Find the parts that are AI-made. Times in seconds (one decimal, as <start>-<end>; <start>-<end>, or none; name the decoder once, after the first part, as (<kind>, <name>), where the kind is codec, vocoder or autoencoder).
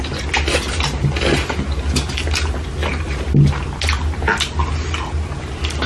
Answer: none